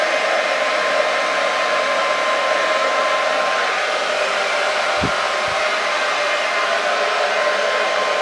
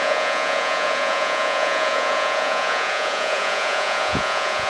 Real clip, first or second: first